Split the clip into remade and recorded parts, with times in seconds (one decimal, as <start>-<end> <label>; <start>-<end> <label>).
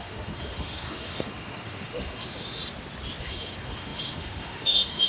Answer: 0.0-2.6 remade; 2.6-3.2 recorded; 3.2-5.1 remade